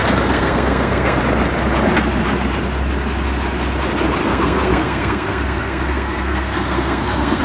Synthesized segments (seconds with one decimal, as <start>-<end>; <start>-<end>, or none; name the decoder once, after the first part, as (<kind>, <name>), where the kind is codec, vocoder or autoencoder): 0.0-1.2 (codec, SNAC); 4.2-7.4